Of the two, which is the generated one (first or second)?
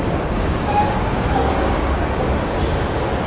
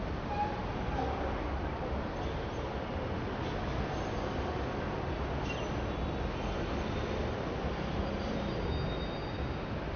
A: first